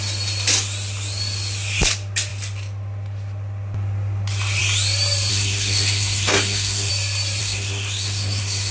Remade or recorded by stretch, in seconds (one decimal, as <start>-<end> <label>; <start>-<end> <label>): 0.0-5.3 recorded; 5.3-6.9 remade; 6.9-7.4 recorded; 7.4-8.7 remade